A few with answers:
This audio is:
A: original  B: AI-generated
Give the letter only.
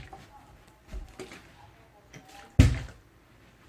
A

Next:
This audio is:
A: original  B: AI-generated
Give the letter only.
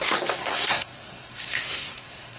B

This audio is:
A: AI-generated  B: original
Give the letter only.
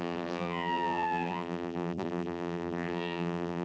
A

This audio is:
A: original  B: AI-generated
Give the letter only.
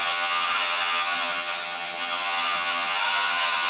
B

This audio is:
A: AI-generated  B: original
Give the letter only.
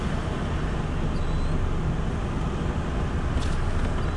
B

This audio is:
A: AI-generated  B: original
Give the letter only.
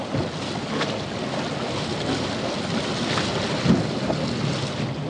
B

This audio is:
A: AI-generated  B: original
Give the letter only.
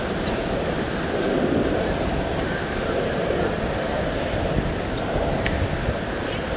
A